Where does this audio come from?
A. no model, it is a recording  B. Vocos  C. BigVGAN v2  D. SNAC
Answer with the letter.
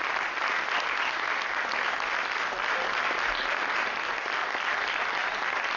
A